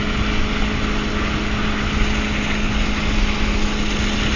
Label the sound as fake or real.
real